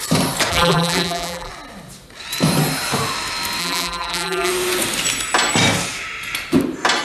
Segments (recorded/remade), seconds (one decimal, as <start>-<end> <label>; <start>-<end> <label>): 0.0-0.5 recorded; 0.5-1.5 remade; 1.5-3.6 recorded; 3.6-4.5 remade; 4.5-7.0 recorded